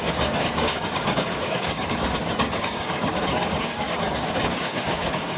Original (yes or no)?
no